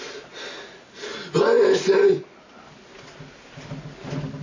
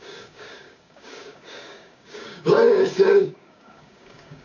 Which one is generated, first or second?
second